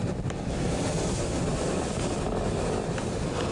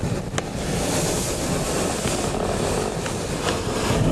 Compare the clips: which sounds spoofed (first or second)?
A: first